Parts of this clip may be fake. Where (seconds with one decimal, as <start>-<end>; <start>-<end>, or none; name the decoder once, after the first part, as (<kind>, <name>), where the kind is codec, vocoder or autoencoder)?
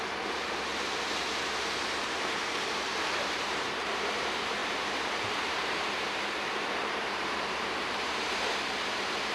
0.0-9.3 (vocoder, BigVGAN v2)